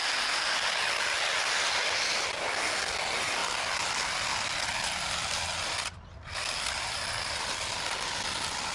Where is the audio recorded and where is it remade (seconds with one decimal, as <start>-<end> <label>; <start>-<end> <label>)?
0.0-8.7 recorded